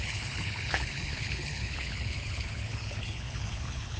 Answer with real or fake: fake